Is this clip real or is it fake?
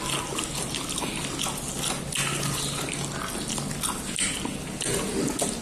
real